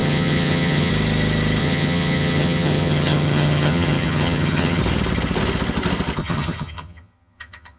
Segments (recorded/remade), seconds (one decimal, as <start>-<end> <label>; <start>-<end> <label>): 0.0-0.9 remade; 0.9-1.6 recorded; 1.6-4.8 remade; 4.8-6.2 recorded; 6.2-7.8 remade